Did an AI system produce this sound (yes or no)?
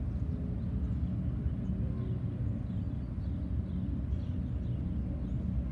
no